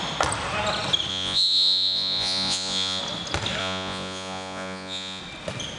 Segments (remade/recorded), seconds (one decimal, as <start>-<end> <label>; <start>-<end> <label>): 0.0-1.1 recorded; 1.1-3.0 remade; 3.0-3.6 recorded; 3.6-5.2 remade; 5.2-5.8 recorded